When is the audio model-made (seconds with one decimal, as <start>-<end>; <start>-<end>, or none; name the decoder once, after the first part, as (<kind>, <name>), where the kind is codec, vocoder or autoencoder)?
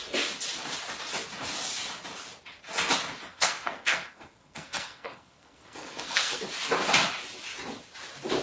3.3-6.4 (codec, SNAC)